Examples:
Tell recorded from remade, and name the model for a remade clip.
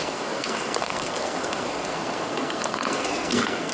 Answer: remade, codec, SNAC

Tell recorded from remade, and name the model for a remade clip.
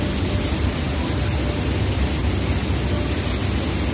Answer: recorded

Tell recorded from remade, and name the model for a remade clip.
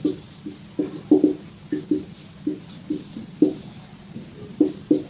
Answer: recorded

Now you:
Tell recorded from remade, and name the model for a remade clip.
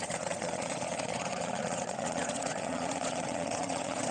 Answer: remade, vocoder, Vocos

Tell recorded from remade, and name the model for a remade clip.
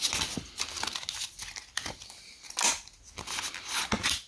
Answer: recorded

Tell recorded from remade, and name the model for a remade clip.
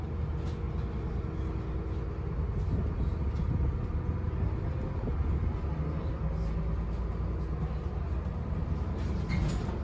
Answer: recorded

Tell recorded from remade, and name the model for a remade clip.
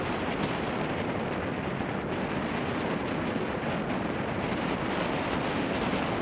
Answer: recorded